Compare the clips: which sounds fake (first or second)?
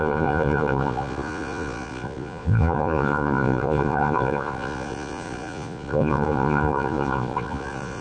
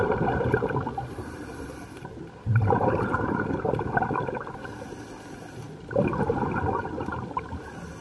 first